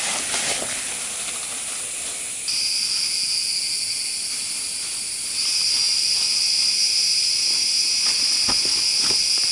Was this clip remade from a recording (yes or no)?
no